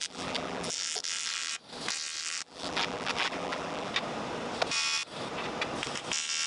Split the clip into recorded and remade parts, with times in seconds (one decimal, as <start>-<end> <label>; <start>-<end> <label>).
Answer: 0.0-1.5 remade; 1.5-2.2 recorded; 2.2-3.9 remade; 3.9-6.5 recorded